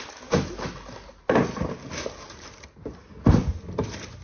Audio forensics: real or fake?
real